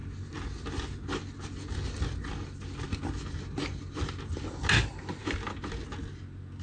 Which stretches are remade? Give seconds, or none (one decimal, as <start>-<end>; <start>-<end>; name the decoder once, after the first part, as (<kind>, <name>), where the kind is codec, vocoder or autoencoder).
none